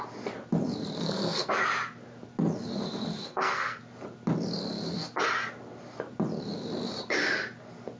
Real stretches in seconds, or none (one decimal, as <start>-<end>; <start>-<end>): 0.0-1.0; 1.5-3.2; 3.8-8.0